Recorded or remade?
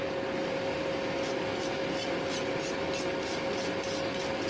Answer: recorded